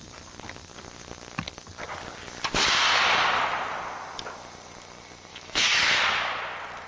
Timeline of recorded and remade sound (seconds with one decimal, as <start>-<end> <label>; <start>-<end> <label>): 0.0-5.3 recorded; 5.3-6.0 remade; 6.0-6.9 recorded